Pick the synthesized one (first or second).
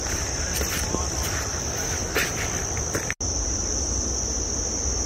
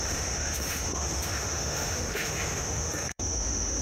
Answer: second